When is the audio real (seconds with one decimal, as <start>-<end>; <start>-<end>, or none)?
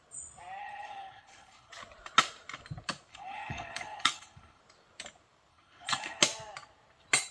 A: 0.0-0.6; 1.7-3.1; 4.6-5.5; 6.2-7.3